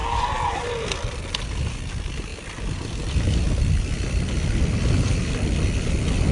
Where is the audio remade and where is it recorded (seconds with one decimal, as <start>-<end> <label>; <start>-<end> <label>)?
0.0-6.3 recorded